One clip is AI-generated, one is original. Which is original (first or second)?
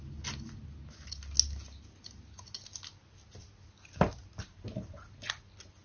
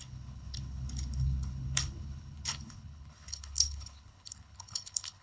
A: first